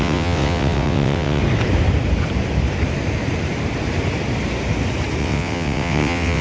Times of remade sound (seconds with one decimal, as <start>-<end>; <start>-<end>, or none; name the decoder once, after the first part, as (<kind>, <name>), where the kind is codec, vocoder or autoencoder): 0.0-1.4 (vocoder, WaveNeXt); 5.2-6.4

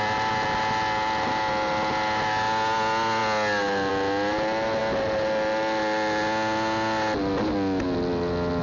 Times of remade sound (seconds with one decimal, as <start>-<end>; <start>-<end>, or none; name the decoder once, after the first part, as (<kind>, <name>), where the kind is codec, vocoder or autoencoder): none

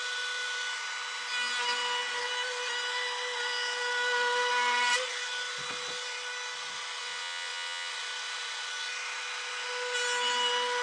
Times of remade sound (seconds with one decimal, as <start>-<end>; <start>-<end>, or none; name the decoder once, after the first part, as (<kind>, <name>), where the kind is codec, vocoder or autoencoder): 7.0-7.9 (vocoder, WaveNeXt)

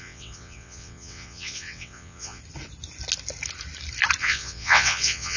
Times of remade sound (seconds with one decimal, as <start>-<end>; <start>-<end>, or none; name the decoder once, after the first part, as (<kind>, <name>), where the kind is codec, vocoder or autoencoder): 0.0-2.4 (vocoder, WaveNeXt); 4.2-5.4

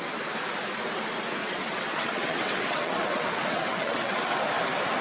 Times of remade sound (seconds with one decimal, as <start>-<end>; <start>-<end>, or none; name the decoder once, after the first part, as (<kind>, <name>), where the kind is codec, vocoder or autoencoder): 1.4-4.4 (vocoder, WaveNeXt)

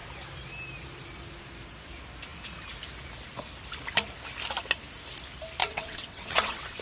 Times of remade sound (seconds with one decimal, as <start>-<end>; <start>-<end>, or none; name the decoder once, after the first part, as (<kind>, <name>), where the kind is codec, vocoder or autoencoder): 5.6-6.8 (vocoder, WaveNeXt)

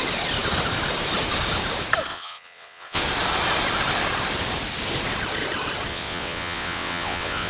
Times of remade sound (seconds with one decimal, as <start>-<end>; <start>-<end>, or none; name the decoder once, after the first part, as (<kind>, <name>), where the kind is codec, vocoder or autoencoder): 2.1-3.0 (vocoder, WaveNeXt); 5.9-7.5